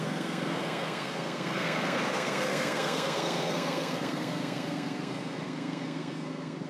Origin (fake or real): fake